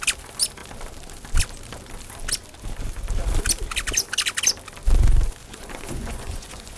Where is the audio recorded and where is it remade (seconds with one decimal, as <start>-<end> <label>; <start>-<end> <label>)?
0.0-5.4 recorded; 5.4-6.8 remade